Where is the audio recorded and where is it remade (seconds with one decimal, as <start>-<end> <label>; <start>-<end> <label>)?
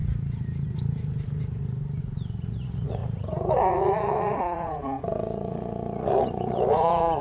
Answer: 0.0-2.0 recorded; 2.0-7.2 remade